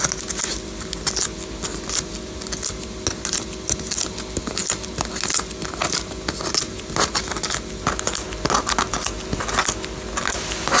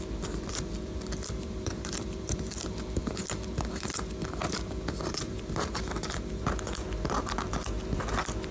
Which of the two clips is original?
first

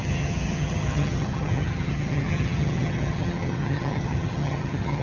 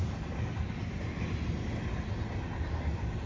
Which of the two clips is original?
second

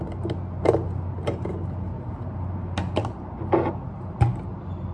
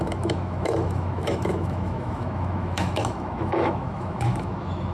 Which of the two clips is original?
first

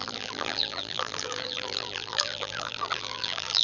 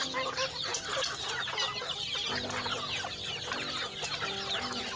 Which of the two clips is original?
second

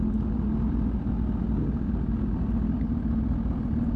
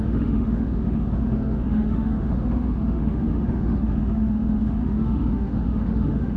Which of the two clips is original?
first